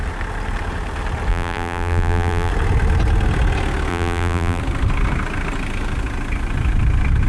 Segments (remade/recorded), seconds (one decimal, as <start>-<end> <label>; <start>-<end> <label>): 0.0-1.3 recorded; 1.3-2.5 remade; 2.5-3.9 recorded; 3.9-4.6 remade; 4.6-7.3 recorded